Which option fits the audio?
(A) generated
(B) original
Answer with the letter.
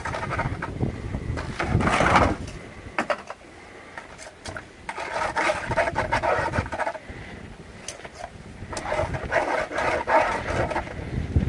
B